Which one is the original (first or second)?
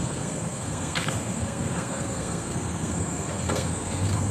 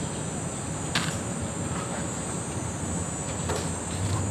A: second